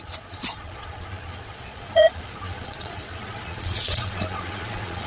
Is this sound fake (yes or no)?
yes